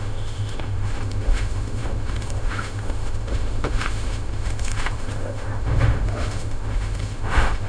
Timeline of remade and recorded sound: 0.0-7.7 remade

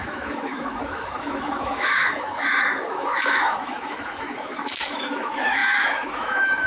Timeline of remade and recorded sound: 0.0-6.7 remade

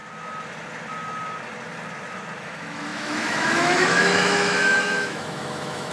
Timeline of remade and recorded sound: 0.0-2.4 recorded; 2.4-5.9 remade

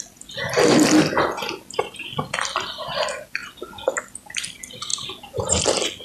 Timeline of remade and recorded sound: 0.0-6.0 recorded

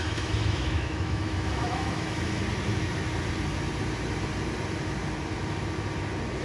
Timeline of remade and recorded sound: 0.0-2.4 remade; 2.4-6.4 recorded

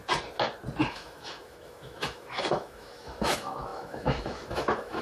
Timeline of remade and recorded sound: 0.0-0.9 recorded; 0.9-5.0 remade

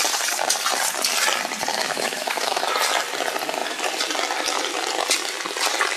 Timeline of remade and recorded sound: 0.0-1.7 recorded; 1.7-2.7 remade; 2.7-6.0 recorded